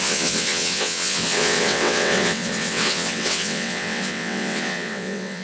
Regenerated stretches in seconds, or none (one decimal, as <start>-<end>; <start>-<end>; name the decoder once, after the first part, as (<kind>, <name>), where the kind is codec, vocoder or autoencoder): 0.0-5.4 (vocoder, WaveNeXt)